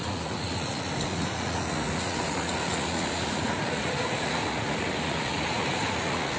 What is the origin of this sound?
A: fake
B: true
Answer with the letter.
A